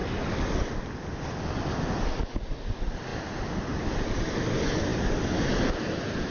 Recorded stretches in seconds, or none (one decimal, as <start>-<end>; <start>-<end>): 0.0-6.3